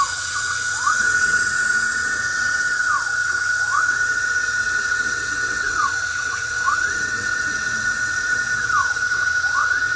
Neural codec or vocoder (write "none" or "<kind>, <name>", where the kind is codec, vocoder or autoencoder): vocoder, WaveNeXt